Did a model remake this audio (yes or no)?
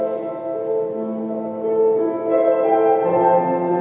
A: no